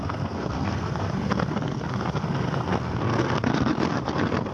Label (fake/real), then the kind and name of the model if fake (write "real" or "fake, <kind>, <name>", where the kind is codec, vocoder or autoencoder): fake, codec, SNAC